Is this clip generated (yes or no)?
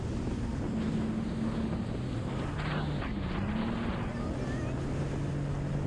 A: no